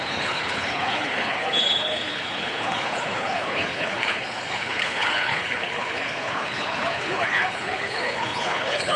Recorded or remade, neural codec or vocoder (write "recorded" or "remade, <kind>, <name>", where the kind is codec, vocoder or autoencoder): remade, codec, HILCodec